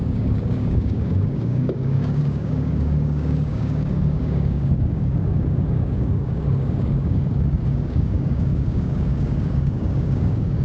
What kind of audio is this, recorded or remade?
remade